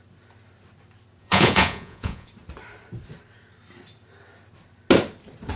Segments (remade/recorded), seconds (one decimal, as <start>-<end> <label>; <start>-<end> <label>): 0.0-1.2 recorded; 1.2-2.3 remade; 2.3-5.6 recorded